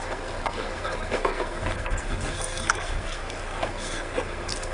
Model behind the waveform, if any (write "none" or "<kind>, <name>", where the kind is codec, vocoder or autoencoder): codec, SNAC